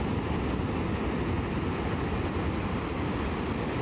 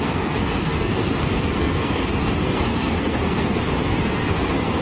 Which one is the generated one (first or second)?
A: second